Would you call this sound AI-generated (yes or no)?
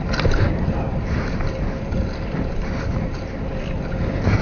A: no